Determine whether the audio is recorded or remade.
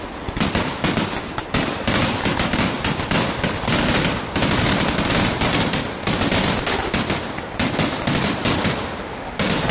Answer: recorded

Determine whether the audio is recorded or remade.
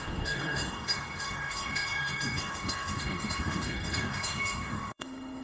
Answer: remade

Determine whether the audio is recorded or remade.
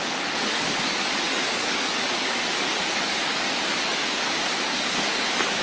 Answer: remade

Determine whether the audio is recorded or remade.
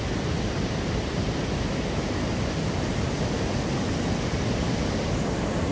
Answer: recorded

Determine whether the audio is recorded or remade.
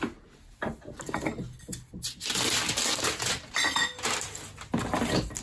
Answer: recorded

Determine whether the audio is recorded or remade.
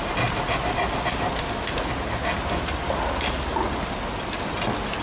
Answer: recorded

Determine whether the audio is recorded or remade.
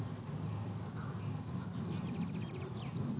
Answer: recorded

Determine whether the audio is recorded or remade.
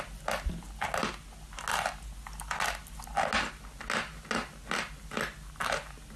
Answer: recorded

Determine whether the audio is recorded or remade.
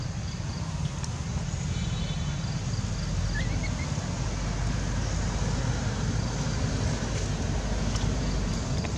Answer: recorded